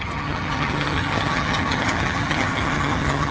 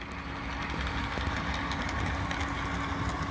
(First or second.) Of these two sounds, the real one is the second